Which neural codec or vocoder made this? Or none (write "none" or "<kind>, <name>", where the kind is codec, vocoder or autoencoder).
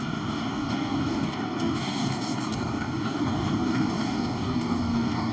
codec, DAC